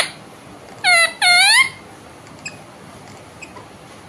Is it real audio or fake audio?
real